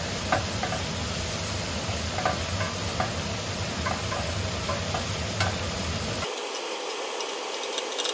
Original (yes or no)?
yes